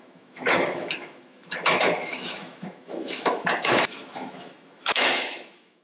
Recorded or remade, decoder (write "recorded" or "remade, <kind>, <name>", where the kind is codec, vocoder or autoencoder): remade, autoencoder, DAC-VAE